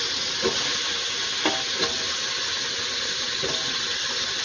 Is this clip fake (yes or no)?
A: no